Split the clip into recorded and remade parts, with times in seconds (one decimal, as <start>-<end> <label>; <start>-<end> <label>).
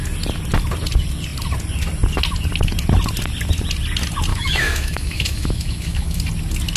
0.0-4.3 recorded; 4.3-6.2 remade; 6.2-6.8 recorded